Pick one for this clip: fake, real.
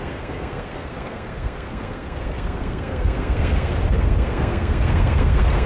fake